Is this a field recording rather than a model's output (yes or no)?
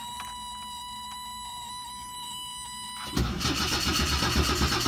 yes